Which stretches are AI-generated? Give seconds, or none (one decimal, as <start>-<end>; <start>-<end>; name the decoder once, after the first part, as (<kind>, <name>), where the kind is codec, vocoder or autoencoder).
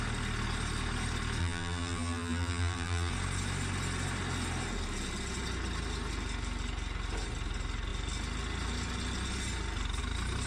1.4-3.1 (vocoder, BigVGAN v2)